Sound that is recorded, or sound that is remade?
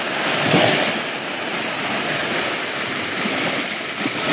recorded